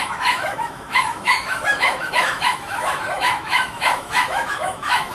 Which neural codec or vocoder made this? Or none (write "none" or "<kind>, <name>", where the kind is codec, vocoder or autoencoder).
autoencoder, DAC-VAE